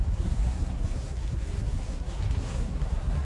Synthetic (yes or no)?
yes